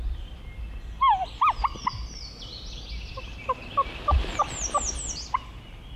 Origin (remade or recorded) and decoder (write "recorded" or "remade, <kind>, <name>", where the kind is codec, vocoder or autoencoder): recorded